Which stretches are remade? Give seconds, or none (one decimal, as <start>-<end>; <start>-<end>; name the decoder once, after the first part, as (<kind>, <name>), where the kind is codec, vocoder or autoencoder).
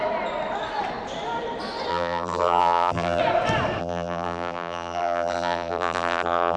1.9-3.2 (vocoder, BigVGAN v2); 3.8-6.6